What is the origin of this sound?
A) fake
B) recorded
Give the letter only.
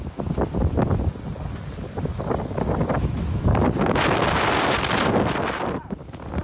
B